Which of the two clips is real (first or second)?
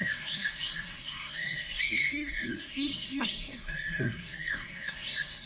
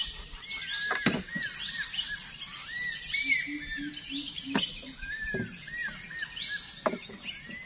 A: second